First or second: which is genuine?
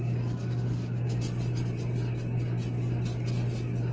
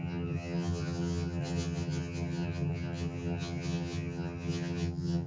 first